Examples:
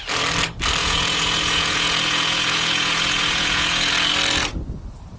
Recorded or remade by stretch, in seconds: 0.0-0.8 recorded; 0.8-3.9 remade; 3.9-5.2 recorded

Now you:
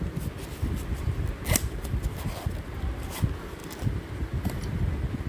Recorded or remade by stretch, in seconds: 0.0-5.3 recorded